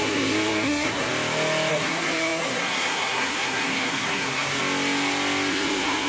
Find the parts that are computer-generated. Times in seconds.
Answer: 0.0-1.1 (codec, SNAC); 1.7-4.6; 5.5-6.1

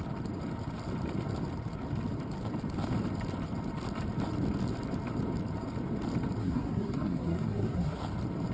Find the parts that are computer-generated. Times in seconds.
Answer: 6.4-8.0 (codec, SNAC)

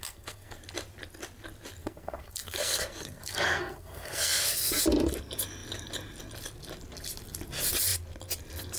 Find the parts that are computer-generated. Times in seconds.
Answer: 0.0-0.6 (codec, SNAC); 1.8-4.8

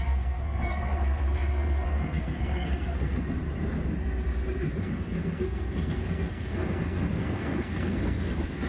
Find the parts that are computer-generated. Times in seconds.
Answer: 0.0-3.4 (codec, SNAC); 4.8-8.7